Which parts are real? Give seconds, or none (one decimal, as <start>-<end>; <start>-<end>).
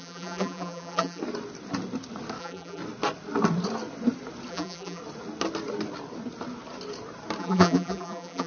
1.2-2.4; 2.8-4.5; 5.0-7.4